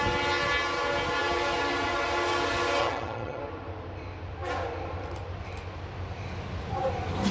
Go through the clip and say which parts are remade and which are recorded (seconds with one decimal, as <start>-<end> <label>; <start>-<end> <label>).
0.0-2.8 recorded; 2.8-3.4 remade; 3.4-7.3 recorded